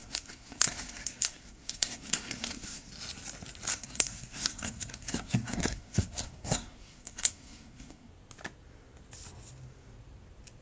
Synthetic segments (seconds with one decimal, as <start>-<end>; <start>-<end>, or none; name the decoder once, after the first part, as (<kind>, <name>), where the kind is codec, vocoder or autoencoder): 0.0-2.9 (codec, SNAC); 3.7-8.1